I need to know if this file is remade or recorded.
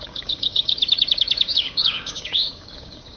remade